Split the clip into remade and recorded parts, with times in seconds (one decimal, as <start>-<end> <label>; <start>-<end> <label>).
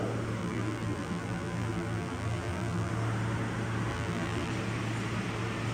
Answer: 0.0-0.4 recorded; 0.4-2.9 remade; 2.9-3.9 recorded; 3.9-4.5 remade; 4.5-5.7 recorded